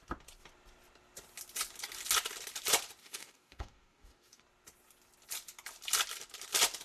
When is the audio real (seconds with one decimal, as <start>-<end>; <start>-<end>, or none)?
0.0-3.0; 4.4-6.8